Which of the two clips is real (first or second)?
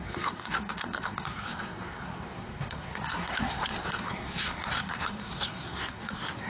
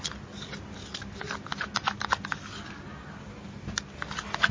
second